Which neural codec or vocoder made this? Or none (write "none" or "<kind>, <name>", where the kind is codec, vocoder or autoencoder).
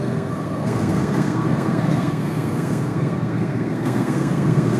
codec, SNAC